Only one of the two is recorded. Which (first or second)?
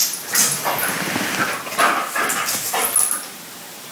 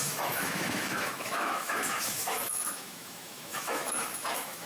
first